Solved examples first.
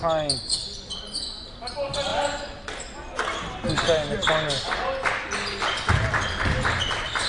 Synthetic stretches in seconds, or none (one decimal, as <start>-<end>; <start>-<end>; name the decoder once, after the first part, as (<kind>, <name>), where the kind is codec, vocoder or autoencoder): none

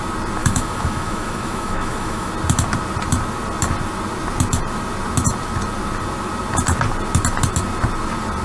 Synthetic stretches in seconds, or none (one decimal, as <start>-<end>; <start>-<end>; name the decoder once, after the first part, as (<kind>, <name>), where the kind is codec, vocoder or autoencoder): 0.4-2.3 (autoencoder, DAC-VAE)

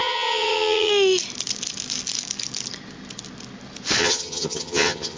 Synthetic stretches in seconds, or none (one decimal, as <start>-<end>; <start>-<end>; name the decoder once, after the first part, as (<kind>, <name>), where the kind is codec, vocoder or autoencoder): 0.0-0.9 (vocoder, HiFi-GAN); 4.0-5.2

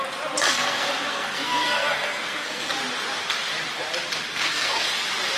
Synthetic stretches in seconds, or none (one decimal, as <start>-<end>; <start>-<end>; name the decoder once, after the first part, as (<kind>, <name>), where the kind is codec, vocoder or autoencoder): 0.5-2.7 (codec, SNAC); 4.3-4.9